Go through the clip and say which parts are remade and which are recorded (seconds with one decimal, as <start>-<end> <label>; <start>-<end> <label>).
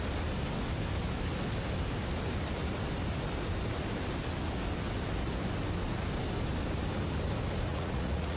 0.0-7.7 recorded; 7.7-8.4 remade